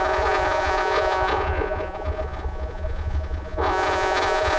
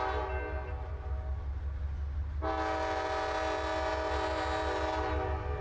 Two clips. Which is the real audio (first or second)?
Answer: second